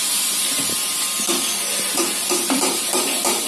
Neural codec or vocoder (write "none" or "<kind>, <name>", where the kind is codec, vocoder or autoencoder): vocoder, BigVGAN v2